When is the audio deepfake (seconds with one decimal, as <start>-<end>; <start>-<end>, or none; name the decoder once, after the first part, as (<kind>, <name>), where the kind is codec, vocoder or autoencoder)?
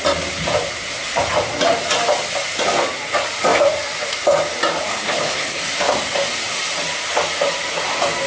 4.9-5.6 (codec, HILCodec)